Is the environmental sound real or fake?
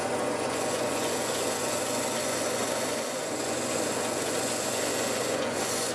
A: fake